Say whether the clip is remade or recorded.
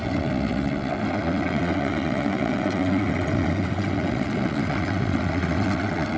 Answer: remade